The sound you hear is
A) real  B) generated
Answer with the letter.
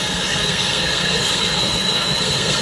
B